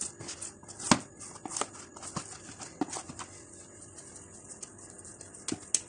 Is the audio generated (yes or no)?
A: no